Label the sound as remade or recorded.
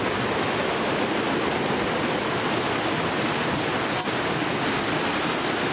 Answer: recorded